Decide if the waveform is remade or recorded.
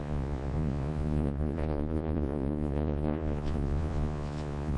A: remade